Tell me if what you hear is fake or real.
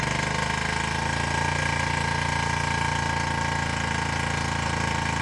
real